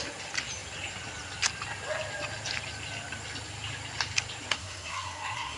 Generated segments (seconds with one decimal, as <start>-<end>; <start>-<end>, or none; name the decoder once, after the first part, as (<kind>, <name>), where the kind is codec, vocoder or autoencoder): 4.5-5.6 (codec, SNAC)